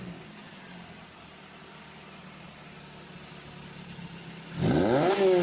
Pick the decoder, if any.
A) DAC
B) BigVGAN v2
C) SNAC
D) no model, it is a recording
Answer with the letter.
D